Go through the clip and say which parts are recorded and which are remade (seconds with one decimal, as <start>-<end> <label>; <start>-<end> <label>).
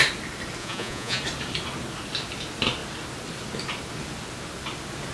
0.0-0.6 recorded; 0.6-1.2 remade; 1.2-5.1 recorded